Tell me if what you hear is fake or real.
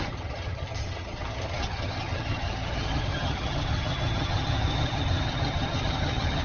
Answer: fake